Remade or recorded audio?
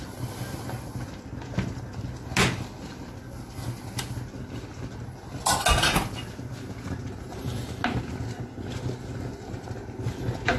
recorded